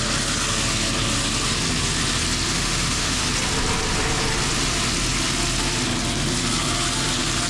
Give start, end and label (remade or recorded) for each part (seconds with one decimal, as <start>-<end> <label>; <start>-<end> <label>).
0.0-2.5 recorded; 2.5-3.2 remade; 3.2-7.5 recorded